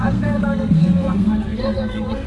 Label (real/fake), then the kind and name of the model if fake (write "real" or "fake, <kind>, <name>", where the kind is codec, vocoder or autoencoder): fake, codec, SNAC